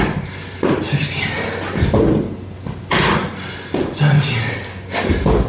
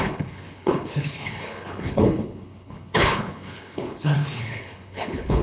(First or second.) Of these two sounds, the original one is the first